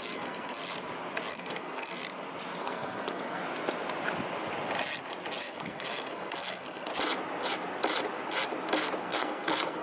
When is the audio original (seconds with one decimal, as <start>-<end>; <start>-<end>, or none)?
0.6-1.3; 2.0-2.6; 3.4-5.4; 6.9-9.0